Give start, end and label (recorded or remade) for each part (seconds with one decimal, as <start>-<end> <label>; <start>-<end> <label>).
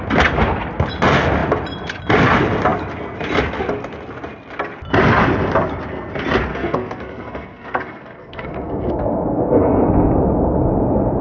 0.0-6.5 recorded; 6.5-9.9 remade; 9.9-11.2 recorded